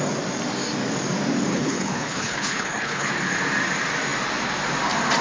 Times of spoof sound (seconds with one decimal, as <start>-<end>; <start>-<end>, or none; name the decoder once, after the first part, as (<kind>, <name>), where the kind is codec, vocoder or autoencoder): 1.5-3.1 (codec, HILCodec)